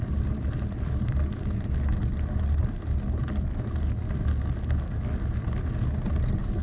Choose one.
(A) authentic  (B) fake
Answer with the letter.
A